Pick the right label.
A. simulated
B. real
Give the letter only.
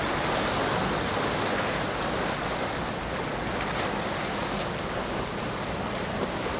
B